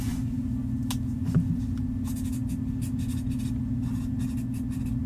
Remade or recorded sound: recorded